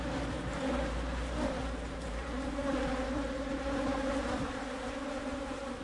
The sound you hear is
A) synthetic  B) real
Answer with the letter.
A